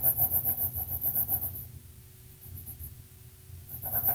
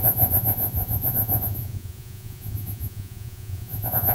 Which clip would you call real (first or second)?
first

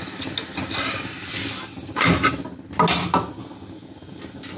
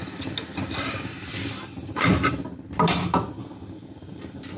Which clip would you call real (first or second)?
first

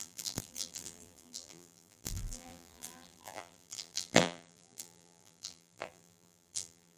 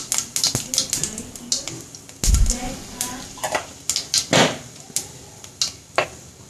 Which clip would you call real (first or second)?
second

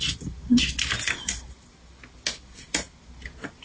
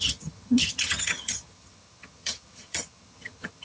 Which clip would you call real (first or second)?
first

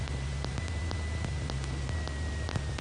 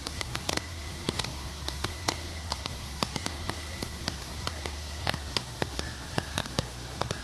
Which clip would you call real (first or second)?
first